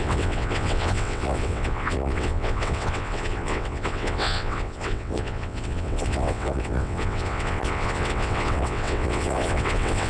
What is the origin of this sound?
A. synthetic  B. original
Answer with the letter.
A